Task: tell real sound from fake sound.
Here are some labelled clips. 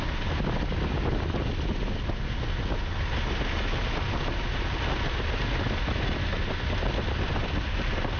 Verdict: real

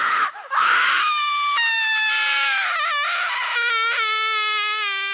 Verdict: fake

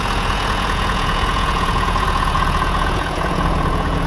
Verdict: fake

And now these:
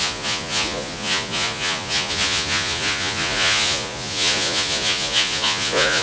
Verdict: fake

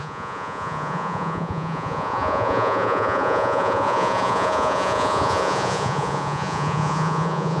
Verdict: fake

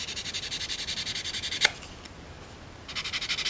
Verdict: real